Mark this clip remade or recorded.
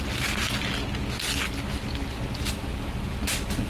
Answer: recorded